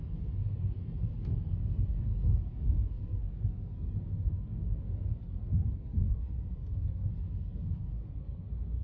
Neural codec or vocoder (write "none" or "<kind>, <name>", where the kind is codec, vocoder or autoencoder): codec, SNAC